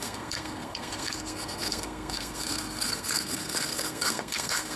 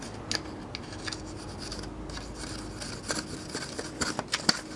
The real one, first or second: second